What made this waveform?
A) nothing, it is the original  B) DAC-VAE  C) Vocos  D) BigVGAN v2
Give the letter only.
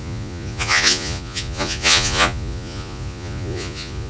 C